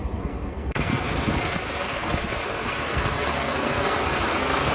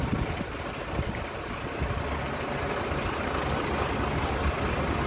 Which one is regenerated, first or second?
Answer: first